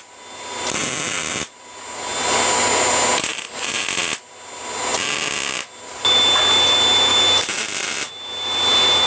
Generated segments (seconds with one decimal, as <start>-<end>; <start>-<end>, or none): none